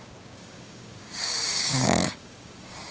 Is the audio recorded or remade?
remade